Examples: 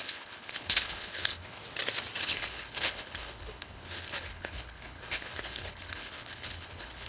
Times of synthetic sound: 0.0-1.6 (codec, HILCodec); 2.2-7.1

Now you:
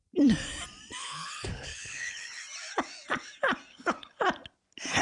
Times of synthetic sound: 1.0-2.4 (codec, HILCodec); 3.7-4.2